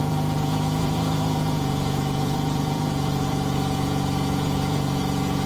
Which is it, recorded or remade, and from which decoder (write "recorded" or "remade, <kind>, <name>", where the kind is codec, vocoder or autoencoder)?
remade, vocoder, Vocos